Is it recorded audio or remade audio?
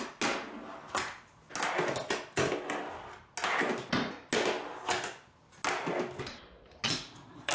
recorded